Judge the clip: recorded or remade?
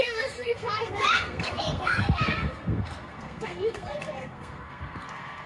remade